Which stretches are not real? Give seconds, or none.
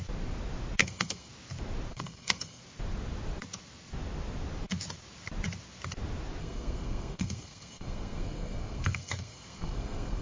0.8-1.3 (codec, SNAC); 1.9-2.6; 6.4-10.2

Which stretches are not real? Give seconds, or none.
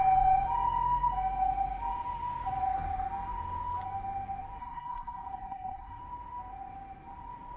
4.6-6.0 (codec, SNAC)